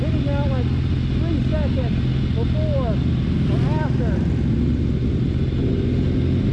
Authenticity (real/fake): real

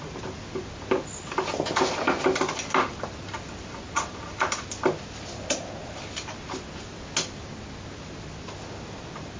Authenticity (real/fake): real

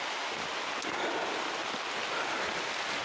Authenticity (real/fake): real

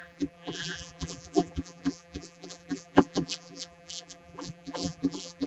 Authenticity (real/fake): fake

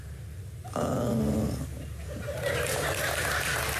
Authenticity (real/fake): real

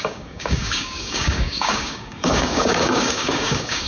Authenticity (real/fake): fake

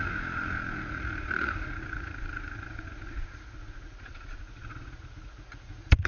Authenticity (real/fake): fake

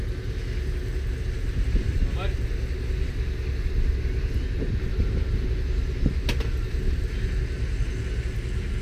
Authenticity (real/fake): real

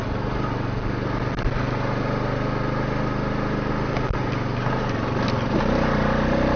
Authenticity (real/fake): real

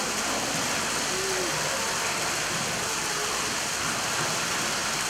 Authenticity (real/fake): real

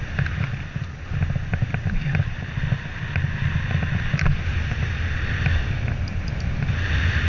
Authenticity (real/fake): real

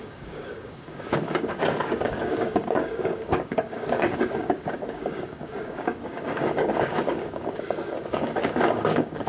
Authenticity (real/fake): fake